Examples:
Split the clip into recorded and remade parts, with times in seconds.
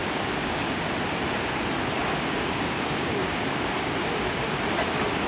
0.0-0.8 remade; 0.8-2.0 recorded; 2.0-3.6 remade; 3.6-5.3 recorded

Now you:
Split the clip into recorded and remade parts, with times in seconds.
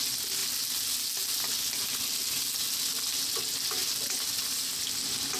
0.0-5.4 recorded